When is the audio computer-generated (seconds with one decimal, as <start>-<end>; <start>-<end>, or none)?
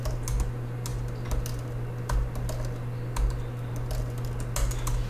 none